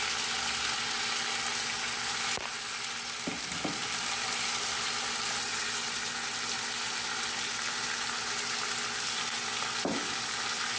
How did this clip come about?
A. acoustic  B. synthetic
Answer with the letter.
A